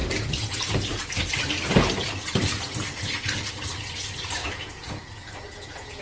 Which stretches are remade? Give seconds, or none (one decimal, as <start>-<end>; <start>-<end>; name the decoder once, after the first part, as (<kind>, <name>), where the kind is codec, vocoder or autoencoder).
4.4-6.0 (vocoder, Vocos)